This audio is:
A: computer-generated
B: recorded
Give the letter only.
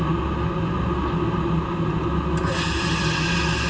B